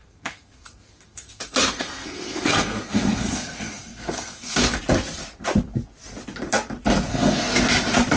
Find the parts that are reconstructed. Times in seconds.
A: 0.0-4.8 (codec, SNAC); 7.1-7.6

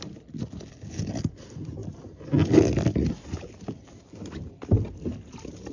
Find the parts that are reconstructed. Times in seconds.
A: none

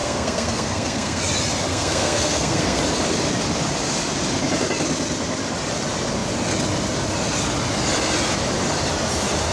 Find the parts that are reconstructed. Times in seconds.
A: 0.0-1.2 (codec, SNAC); 1.7-2.8

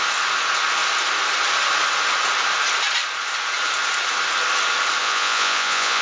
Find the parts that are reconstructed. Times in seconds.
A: 5.0-6.0 (vocoder, Vocos)

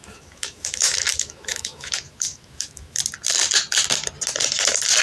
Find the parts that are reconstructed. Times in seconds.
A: 0.0-3.0 (autoencoder, DAC-VAE)